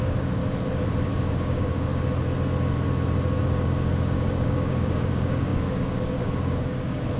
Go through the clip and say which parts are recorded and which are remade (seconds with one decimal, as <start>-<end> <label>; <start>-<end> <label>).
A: 0.0-0.4 remade; 0.4-1.1 recorded; 1.1-1.9 remade; 1.9-3.4 recorded; 3.4-7.2 remade